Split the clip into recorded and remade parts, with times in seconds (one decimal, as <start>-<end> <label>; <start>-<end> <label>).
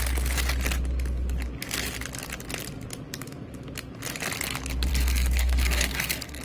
0.0-4.9 recorded; 4.9-6.4 remade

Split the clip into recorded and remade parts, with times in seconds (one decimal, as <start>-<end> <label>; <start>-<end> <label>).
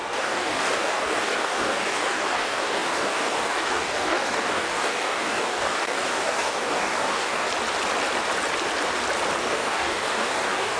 0.0-7.5 remade; 7.5-9.4 recorded; 9.4-10.8 remade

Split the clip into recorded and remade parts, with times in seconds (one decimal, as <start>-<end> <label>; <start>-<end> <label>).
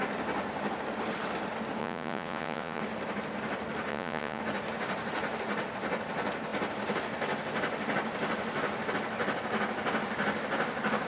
0.0-1.8 recorded; 1.8-2.8 remade; 2.8-3.9 recorded; 3.9-4.4 remade; 4.4-11.1 recorded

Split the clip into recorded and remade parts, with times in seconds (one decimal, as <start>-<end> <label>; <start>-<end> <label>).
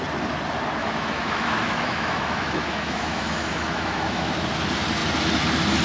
0.0-0.8 recorded; 0.8-4.3 remade; 4.3-5.8 recorded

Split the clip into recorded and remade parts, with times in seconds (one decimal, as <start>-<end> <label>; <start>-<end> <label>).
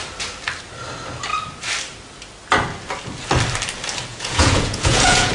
0.0-4.1 recorded; 4.1-5.3 remade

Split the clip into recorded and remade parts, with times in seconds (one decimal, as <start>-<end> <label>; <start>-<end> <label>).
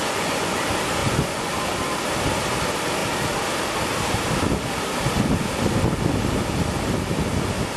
0.0-0.6 remade; 0.6-1.0 recorded; 1.0-1.5 remade; 1.5-7.8 recorded